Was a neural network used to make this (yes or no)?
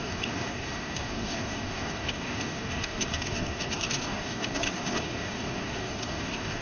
yes